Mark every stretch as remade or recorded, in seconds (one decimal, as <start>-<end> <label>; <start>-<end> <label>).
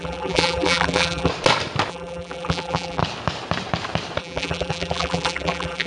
0.0-1.3 remade; 1.3-1.9 recorded; 1.9-3.0 remade; 3.0-4.2 recorded; 4.2-5.9 remade